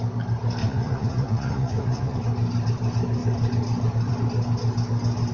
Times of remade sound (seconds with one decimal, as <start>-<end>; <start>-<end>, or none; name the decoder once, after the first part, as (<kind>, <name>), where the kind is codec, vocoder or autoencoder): 0.6-2.2 (vocoder, Vocos)